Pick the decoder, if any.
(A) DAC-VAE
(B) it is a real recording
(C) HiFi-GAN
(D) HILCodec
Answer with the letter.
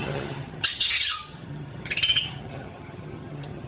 C